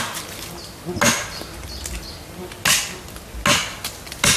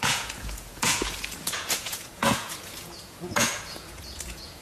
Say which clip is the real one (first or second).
first